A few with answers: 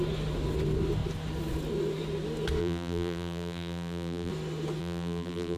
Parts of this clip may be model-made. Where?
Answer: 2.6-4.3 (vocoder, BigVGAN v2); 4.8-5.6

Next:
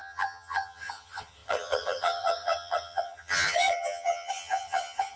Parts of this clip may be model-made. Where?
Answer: 0.0-5.2 (vocoder, HiFi-GAN)

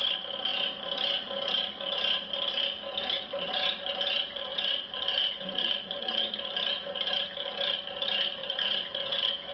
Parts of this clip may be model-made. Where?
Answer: 4.5-6.3 (vocoder, Vocos); 8.4-9.5

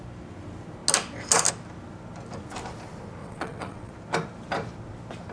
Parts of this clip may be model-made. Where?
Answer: 3.2-3.9 (vocoder, WaveNeXt)

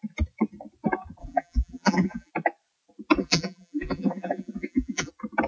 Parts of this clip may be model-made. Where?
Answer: 1.2-2.3 (vocoder, BigVGAN v2); 3.2-5.1